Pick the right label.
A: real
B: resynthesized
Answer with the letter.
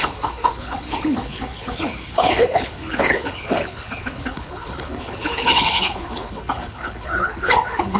B